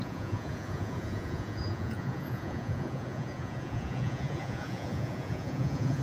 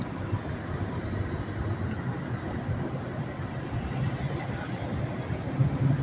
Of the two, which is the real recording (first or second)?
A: second